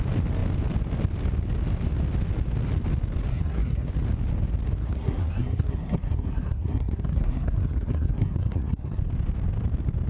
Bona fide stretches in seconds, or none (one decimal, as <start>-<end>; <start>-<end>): 0.0-3.3; 3.9-4.8; 9.0-10.1